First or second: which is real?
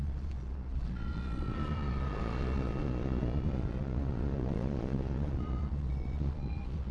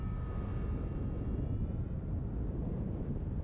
second